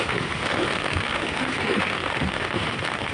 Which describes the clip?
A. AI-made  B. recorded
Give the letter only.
A